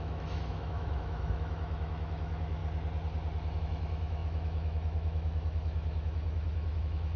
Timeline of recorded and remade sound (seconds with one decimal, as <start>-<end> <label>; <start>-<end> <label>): 0.0-2.6 remade; 2.6-3.6 recorded; 3.6-7.2 remade